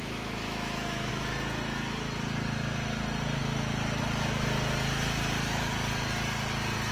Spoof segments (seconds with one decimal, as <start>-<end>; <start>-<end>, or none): 0.0-1.1